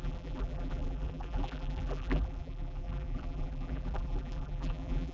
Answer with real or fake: fake